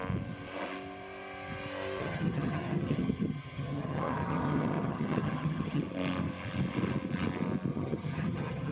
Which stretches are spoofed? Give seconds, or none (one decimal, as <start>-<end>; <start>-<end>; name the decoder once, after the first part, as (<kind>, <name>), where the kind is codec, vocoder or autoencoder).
2.0-5.8 (vocoder, HiFi-GAN); 7.7-8.7